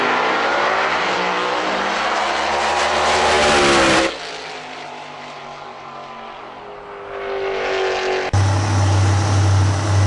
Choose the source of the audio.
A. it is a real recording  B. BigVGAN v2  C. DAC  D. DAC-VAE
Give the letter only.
A